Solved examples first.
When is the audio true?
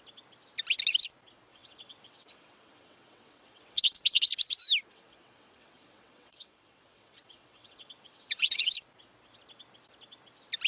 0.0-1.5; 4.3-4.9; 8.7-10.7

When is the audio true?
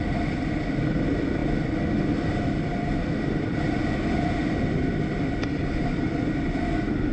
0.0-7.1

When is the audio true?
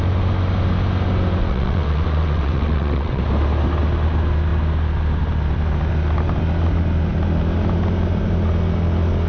0.0-1.4; 3.2-9.3